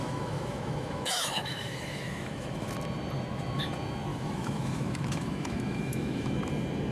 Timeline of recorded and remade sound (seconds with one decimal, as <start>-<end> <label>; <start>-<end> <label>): 0.0-2.7 remade; 2.7-4.1 recorded; 4.1-6.4 remade; 6.4-6.9 recorded